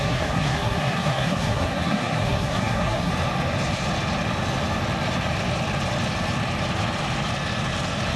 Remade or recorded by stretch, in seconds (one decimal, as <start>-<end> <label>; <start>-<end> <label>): 0.0-3.1 remade; 3.1-8.2 recorded